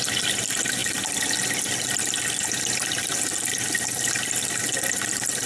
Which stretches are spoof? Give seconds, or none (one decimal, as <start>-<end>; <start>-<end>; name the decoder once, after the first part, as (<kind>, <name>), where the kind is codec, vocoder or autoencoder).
none